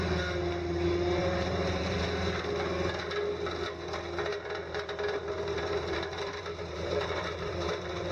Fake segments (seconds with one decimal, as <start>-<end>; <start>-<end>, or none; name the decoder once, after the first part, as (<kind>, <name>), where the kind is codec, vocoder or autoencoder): 1.2-2.0 (vocoder, BigVGAN v2); 4.3-8.1